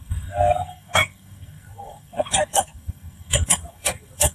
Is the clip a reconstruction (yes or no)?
yes